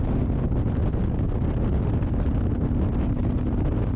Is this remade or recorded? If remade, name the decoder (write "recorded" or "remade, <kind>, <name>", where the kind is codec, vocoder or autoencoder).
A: recorded